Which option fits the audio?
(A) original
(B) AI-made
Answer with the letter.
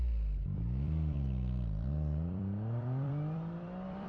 B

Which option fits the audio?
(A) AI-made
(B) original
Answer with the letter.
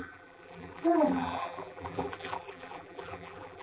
A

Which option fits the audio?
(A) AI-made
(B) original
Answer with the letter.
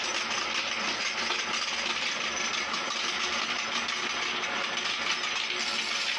B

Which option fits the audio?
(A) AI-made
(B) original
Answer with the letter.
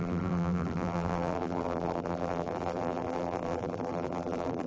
A